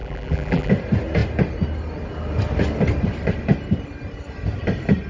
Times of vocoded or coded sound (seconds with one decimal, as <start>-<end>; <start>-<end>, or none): 0.0-0.7

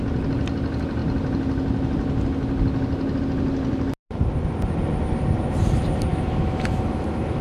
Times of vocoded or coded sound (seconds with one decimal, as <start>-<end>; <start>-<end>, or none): 6.1-7.4

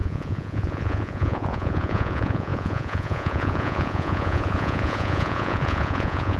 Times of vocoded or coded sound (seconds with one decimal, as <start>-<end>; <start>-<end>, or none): 0.0-6.4